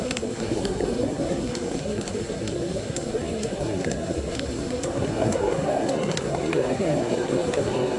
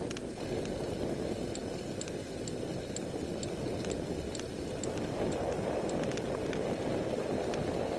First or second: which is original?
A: second